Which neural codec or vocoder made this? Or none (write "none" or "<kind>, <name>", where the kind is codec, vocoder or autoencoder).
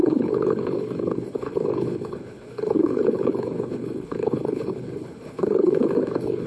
codec, HILCodec